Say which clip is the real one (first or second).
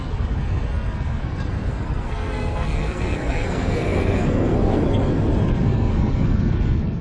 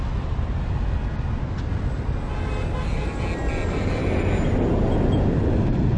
second